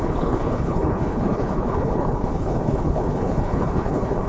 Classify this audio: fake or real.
fake